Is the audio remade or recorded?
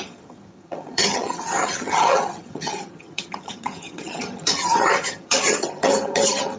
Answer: remade